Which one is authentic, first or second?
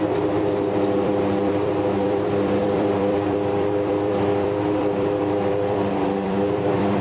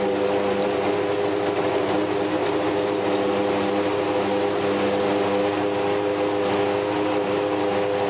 second